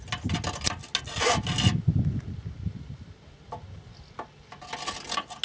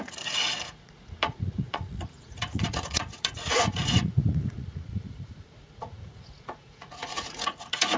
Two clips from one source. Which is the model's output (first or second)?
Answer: second